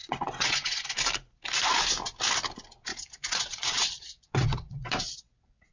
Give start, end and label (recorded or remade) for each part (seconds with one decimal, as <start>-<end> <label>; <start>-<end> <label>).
0.0-0.9 remade; 0.9-2.9 recorded; 2.9-5.7 remade